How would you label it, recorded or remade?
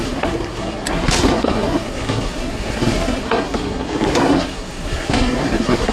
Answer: remade